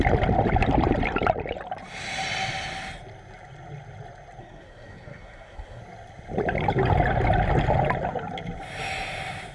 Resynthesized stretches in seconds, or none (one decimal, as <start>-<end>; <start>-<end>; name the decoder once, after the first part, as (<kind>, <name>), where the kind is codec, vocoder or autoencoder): 4.4-5.8 (codec, SNAC)